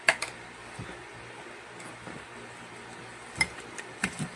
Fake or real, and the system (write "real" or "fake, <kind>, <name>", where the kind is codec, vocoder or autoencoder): real